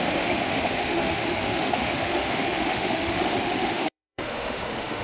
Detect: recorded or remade remade